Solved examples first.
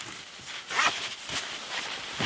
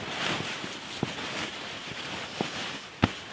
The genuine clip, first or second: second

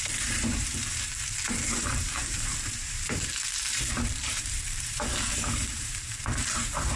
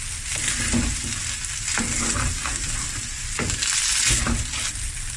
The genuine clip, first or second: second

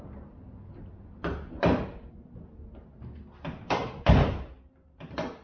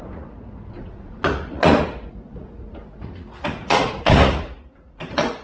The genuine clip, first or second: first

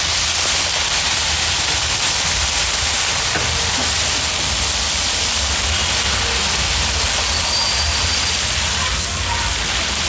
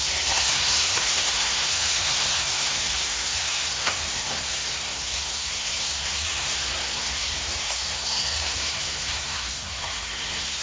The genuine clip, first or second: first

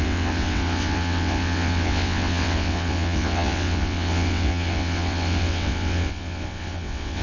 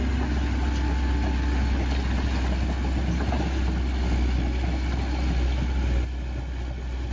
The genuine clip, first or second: second